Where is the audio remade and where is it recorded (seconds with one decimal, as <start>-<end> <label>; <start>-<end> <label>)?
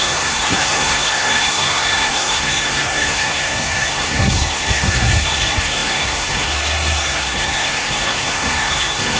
0.0-9.2 remade